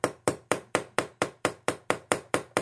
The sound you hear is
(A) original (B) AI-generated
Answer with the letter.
B